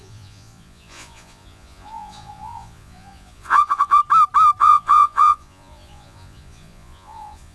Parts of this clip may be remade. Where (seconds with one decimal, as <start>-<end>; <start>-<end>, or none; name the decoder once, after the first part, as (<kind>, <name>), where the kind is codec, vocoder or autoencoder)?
0.0-4.0 (vocoder, Vocos); 4.6-7.5